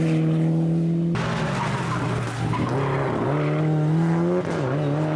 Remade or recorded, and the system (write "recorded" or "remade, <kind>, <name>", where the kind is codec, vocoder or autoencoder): recorded